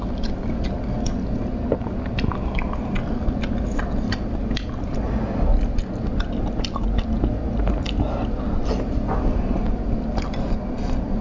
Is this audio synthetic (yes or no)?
no